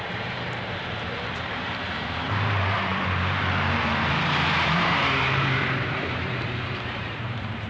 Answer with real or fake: fake